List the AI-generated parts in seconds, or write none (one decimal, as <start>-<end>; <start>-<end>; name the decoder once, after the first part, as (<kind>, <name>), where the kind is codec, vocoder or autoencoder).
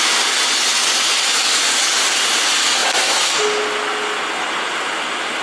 none